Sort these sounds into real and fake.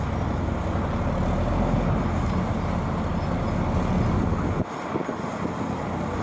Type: real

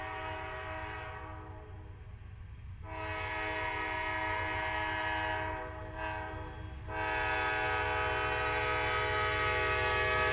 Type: real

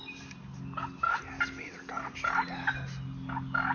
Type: real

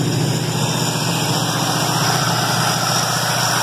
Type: real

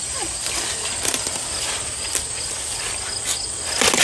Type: real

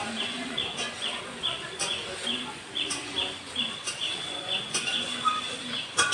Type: fake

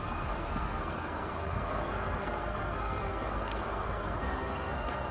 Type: fake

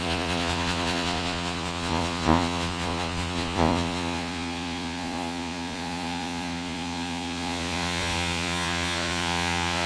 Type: fake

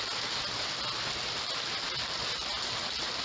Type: real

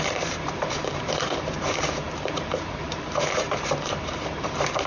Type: fake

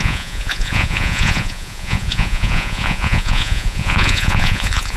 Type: fake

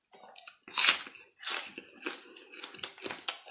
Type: real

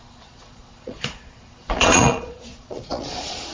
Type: fake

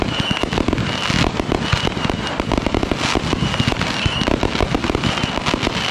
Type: real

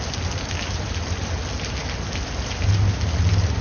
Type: real